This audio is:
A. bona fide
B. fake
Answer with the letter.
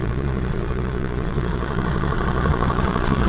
B